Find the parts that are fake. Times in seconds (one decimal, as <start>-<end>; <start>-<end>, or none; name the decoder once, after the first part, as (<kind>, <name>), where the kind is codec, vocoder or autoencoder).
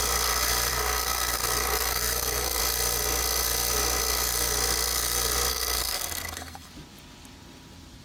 0.7-2.6 (codec, SNAC); 5.5-6.7